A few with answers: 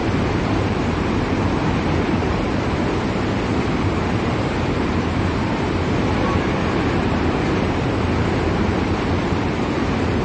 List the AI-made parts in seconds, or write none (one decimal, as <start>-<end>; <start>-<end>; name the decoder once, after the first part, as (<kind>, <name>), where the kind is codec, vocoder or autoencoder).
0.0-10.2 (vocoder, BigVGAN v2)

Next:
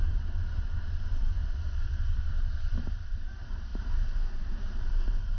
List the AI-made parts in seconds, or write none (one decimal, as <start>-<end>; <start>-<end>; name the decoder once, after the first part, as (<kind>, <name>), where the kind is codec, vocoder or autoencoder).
0.0-5.4 (vocoder, BigVGAN v2)

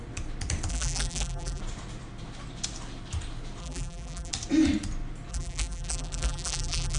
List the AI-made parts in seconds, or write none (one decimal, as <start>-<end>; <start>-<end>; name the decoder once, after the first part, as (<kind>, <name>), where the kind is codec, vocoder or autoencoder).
0.7-1.6 (vocoder, BigVGAN v2); 3.6-4.3; 5.3-7.0

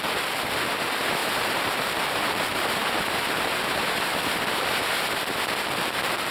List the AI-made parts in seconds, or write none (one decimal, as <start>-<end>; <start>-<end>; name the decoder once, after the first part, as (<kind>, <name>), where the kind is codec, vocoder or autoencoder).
1.2-5.0 (vocoder, BigVGAN v2)

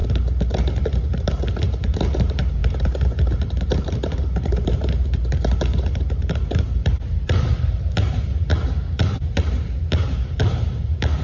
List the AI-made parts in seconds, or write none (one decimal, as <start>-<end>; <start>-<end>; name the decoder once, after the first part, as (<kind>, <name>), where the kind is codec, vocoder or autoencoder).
0.0-11.2 (vocoder, BigVGAN v2)

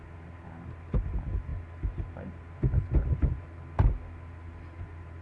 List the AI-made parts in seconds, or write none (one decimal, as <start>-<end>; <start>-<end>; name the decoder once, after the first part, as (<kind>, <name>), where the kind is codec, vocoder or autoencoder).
none

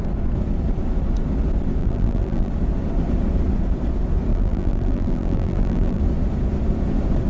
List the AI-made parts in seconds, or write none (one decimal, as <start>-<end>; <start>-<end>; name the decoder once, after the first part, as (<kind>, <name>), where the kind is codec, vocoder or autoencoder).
1.8-2.5 (vocoder, BigVGAN v2); 4.3-6.0

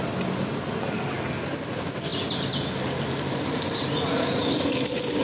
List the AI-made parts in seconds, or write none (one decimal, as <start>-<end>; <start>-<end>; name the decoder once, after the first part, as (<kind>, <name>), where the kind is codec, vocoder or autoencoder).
none